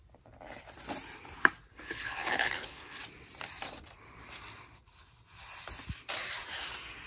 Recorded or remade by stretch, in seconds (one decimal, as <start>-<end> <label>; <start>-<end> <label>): 0.0-1.7 recorded; 1.7-3.0 remade; 3.0-7.1 recorded